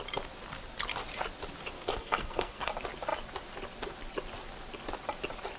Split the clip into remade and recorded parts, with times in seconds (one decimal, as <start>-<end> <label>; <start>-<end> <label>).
0.0-1.9 recorded; 1.9-2.7 remade; 2.7-5.6 recorded